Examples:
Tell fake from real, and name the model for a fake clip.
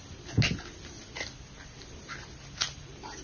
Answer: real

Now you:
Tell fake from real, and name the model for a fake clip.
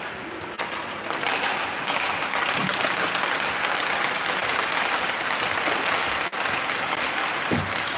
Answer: real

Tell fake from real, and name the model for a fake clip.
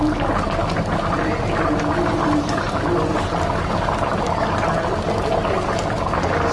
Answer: real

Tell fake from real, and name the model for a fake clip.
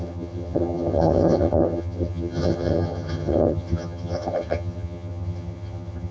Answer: fake, vocoder, HiFi-GAN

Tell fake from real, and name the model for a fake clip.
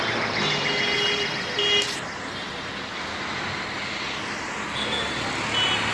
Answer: real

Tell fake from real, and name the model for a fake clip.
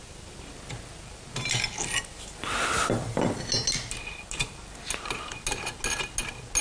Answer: real